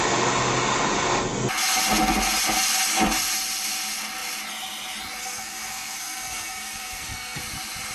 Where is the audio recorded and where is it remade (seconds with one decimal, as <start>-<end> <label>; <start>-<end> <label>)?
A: 0.0-5.2 recorded; 5.2-7.4 remade; 7.4-7.9 recorded